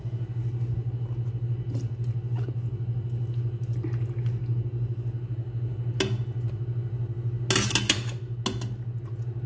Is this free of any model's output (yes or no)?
yes